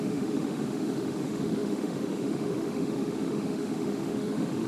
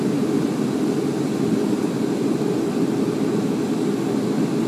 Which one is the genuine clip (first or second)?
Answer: second